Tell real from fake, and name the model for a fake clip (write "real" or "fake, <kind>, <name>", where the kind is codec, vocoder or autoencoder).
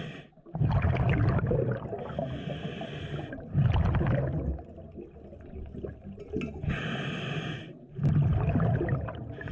real